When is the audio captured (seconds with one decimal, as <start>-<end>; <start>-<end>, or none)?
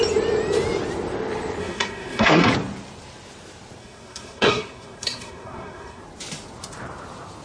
0.0-1.6; 2.5-3.8; 6.0-7.4